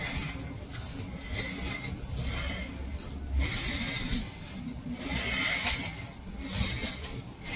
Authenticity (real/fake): real